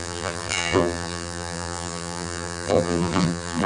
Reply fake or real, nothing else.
fake